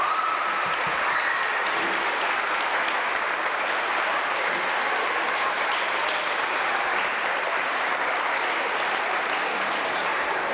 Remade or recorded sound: recorded